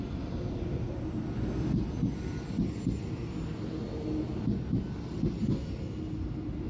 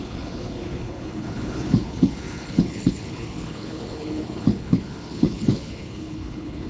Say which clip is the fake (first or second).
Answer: second